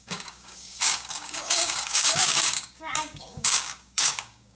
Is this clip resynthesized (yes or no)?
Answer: yes